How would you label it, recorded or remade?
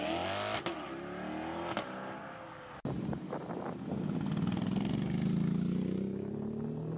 recorded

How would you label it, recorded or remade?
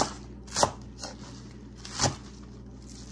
recorded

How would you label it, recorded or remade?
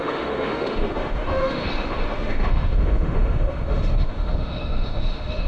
remade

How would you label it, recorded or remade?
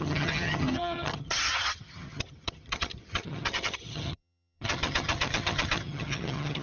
remade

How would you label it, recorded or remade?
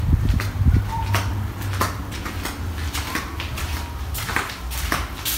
recorded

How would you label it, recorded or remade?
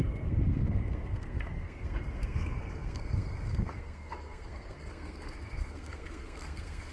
remade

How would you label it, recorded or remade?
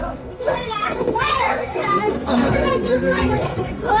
remade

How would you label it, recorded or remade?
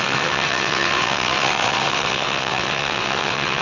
remade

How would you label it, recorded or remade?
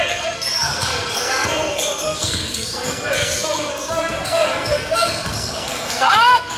remade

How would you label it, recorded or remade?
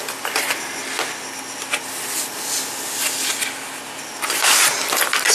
recorded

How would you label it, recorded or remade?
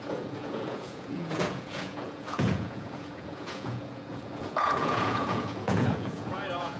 remade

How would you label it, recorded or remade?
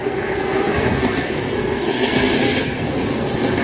remade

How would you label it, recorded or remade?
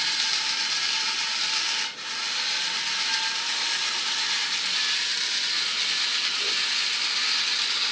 recorded